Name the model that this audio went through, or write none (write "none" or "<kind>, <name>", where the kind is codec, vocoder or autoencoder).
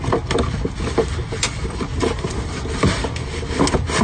none